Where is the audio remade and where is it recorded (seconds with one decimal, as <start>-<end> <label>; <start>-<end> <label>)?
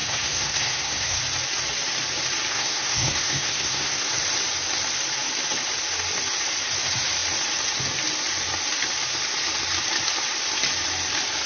0.0-1.2 remade; 1.2-2.5 recorded; 2.5-4.1 remade; 4.1-11.5 recorded